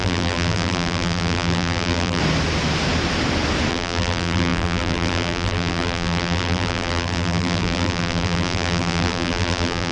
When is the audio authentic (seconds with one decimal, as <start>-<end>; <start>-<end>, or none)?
2.2-3.7